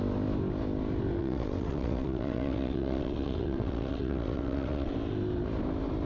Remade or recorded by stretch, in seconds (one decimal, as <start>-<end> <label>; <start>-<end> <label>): 0.0-1.2 recorded; 1.2-4.9 remade; 4.9-6.1 recorded